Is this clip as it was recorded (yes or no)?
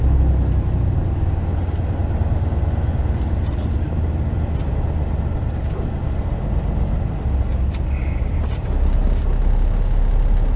yes